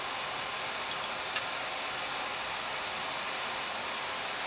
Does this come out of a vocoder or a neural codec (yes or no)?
no